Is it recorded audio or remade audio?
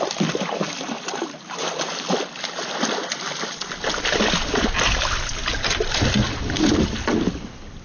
recorded